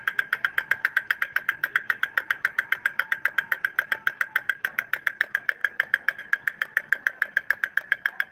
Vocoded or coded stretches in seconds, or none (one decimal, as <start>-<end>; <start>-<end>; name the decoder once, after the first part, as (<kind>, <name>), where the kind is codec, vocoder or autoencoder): 0.0-8.3 (codec, DAC)